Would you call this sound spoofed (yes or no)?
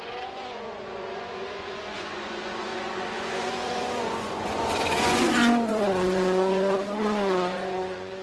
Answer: yes